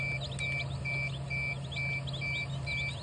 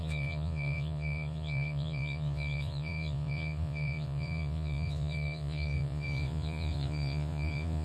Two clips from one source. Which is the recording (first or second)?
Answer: first